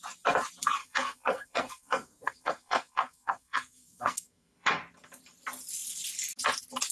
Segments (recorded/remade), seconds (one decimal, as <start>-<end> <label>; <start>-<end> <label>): 0.0-0.8 recorded; 0.8-4.7 remade; 4.7-6.9 recorded